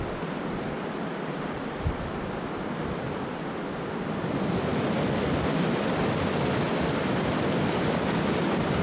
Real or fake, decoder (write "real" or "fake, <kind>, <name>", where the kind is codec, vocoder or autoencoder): real